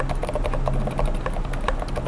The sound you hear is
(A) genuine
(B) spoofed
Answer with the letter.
A